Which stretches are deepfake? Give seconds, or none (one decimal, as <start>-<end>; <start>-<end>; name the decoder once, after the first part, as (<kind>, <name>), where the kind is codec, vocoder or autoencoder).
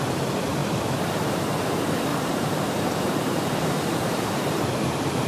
0.6-1.4 (vocoder, BigVGAN v2); 2.1-5.3